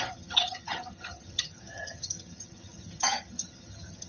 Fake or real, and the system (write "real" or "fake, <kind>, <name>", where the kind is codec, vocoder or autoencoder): fake, vocoder, HiFi-GAN